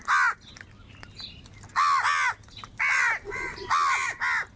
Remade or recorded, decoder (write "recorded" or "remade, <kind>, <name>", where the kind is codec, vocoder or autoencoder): recorded